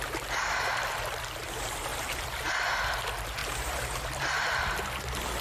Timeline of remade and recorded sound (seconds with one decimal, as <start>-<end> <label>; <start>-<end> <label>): 0.0-1.9 recorded; 1.9-2.5 remade; 2.5-3.4 recorded; 3.4-4.0 remade; 4.0-5.4 recorded